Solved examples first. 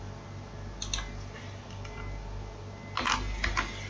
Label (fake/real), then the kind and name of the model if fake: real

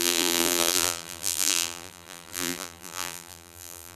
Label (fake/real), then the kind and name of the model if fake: fake, vocoder, BigVGAN v2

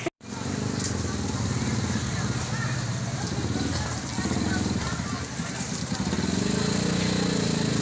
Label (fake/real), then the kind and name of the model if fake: real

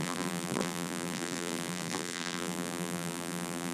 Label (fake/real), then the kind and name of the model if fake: fake, vocoder, BigVGAN v2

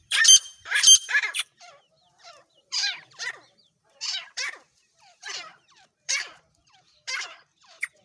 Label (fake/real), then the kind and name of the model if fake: fake, vocoder, BigVGAN v2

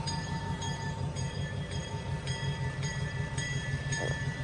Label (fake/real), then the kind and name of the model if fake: fake, vocoder, BigVGAN v2